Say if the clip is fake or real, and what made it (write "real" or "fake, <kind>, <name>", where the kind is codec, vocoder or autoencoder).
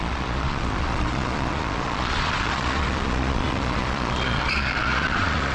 fake, vocoder, Vocos